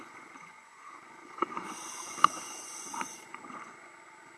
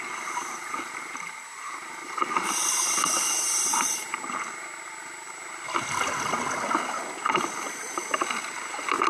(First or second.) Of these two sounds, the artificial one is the first